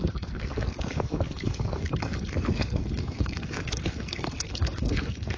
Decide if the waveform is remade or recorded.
remade